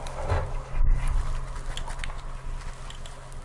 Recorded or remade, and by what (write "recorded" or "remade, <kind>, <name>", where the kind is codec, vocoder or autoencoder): recorded